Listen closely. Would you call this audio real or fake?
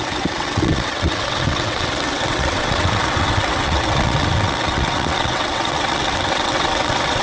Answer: fake